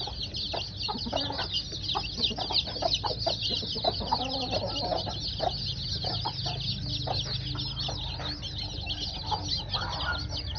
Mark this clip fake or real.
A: real